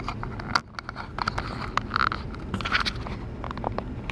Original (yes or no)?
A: yes